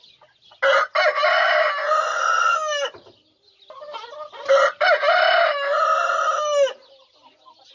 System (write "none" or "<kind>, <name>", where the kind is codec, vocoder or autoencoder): none